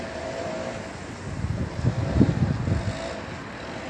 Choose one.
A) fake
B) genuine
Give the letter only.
B